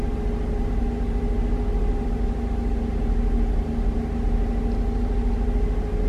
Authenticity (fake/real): real